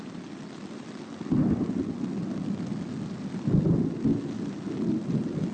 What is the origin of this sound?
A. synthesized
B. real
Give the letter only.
B